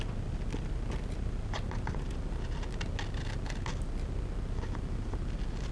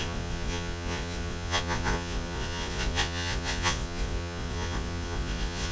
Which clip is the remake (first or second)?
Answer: second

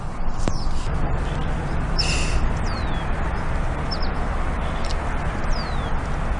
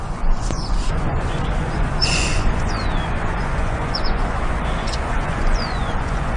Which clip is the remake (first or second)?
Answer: second